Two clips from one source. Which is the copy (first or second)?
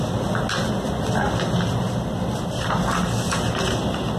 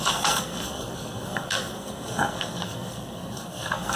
second